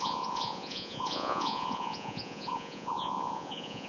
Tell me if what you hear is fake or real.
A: fake